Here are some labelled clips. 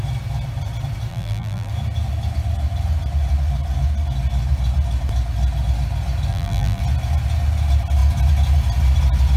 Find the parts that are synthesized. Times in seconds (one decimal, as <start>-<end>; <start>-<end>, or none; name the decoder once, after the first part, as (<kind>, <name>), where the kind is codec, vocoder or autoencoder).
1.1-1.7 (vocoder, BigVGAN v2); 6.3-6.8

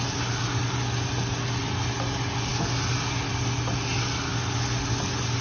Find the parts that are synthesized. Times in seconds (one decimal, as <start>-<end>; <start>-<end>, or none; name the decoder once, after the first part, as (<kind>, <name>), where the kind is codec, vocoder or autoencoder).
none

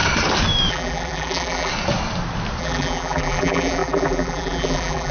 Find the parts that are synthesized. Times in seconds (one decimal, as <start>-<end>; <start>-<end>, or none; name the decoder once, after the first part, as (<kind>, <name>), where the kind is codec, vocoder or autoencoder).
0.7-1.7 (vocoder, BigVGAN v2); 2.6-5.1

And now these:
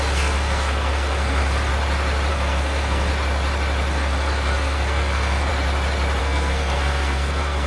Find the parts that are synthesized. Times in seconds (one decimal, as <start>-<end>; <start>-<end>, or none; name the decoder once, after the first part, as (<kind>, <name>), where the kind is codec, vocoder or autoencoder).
0.0-1.7 (codec, SNAC); 2.3-3.1; 3.9-5.5; 6.2-7.7

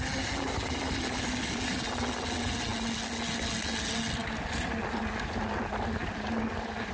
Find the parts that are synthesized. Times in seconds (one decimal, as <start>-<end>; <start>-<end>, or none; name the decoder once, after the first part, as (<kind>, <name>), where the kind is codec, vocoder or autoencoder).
none